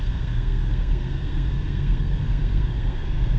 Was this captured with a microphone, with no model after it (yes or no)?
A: no